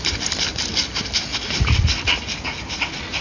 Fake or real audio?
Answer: fake